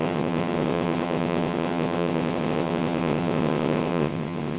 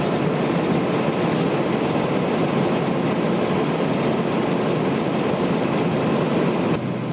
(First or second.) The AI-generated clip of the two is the first